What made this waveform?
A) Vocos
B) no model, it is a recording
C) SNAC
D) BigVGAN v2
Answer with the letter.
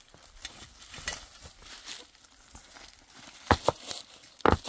B